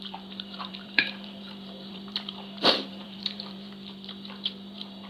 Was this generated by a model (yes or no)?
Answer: yes